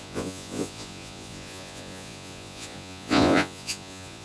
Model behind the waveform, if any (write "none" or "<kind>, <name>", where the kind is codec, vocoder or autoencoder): vocoder, Vocos